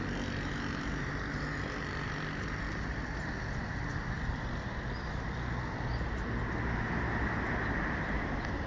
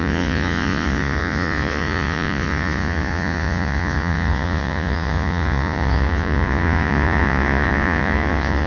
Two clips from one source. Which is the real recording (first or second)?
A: first